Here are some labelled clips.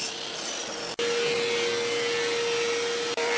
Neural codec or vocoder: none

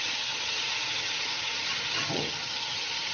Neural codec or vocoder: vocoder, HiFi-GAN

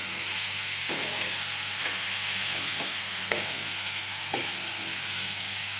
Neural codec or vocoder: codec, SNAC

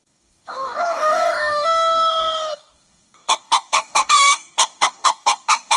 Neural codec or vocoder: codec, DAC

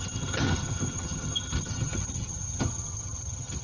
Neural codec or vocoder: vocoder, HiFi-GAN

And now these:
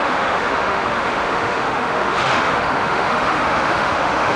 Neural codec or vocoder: autoencoder, DAC-VAE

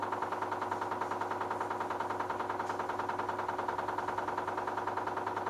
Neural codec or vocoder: none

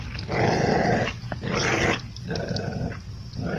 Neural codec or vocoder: none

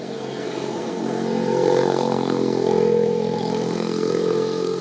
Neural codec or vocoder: codec, SNAC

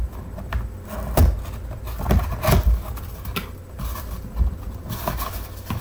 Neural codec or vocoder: none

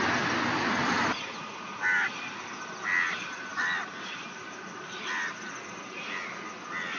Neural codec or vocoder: none